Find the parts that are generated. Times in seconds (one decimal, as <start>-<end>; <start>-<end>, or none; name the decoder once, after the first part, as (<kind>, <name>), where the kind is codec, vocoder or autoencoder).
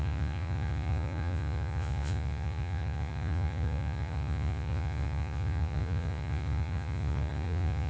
0.0-7.9 (vocoder, Vocos)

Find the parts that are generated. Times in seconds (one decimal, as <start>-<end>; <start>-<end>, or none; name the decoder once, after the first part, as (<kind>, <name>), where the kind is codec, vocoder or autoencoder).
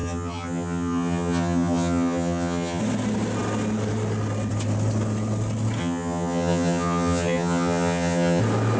0.0-2.8 (vocoder, HiFi-GAN); 5.8-8.4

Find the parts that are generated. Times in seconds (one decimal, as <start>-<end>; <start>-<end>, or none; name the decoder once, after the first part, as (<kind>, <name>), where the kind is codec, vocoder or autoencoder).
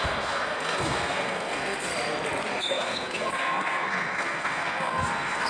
0.0-1.9 (codec, SNAC); 2.5-5.5